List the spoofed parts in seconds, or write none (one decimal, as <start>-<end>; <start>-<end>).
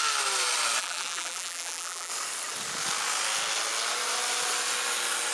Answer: 0.8-2.1